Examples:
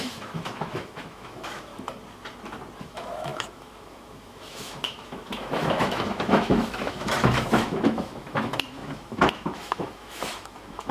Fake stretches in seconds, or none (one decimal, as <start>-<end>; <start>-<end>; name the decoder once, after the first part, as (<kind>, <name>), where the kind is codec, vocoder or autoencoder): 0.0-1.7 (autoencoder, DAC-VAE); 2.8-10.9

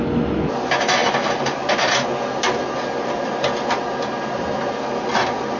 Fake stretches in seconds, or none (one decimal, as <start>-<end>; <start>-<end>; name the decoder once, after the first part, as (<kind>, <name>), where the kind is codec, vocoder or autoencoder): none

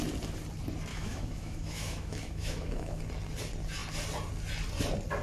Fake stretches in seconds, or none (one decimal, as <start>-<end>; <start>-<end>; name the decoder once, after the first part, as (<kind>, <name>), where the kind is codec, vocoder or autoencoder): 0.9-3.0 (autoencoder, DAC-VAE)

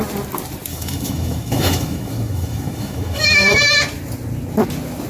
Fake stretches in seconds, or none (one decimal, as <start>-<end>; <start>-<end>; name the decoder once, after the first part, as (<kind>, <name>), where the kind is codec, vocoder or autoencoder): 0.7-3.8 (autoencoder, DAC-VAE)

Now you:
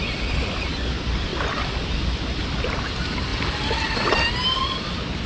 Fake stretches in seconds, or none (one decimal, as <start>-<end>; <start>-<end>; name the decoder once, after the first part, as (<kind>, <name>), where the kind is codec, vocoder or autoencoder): none